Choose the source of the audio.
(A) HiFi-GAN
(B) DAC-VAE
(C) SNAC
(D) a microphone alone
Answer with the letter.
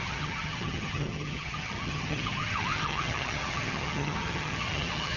A